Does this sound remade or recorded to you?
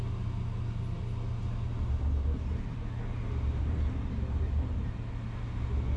recorded